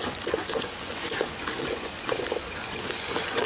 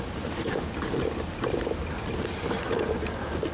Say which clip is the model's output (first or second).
first